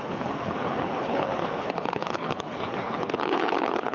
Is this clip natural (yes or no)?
no